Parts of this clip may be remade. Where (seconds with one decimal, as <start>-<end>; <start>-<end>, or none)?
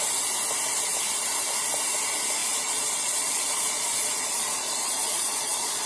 2.4-5.9